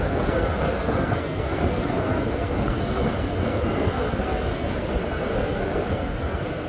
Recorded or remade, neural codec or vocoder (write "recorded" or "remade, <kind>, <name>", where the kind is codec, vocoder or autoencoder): remade, codec, SNAC